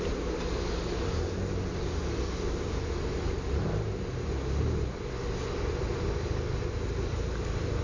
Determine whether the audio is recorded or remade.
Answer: recorded